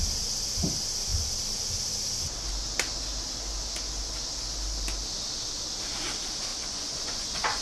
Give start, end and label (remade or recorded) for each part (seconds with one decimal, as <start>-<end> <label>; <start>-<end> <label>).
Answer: 0.0-6.5 recorded; 6.5-7.6 remade